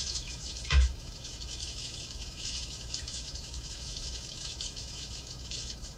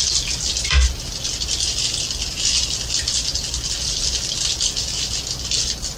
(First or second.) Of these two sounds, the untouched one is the second